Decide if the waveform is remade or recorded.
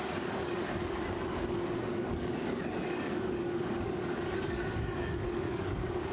remade